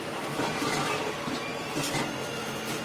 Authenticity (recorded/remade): recorded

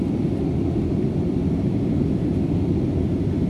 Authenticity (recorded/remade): recorded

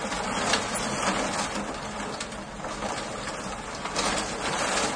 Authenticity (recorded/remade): recorded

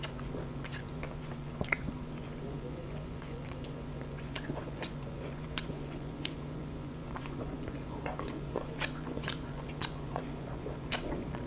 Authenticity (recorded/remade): remade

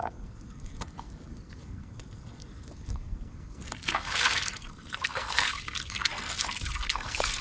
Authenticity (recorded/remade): remade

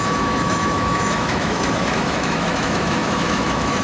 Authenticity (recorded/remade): remade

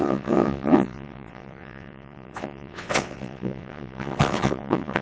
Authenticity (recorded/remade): remade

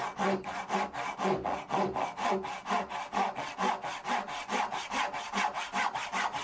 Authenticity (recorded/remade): recorded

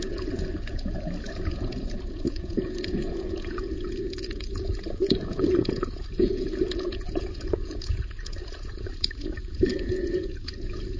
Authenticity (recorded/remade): remade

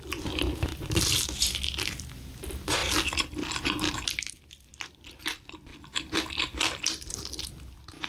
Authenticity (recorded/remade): recorded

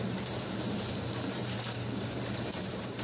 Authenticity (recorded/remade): remade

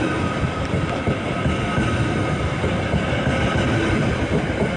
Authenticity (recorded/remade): recorded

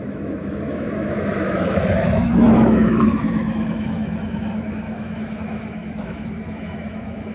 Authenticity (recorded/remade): remade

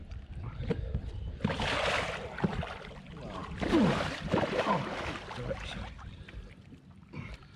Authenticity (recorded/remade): remade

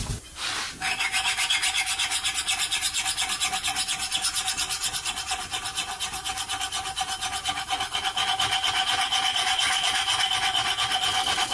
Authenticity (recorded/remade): recorded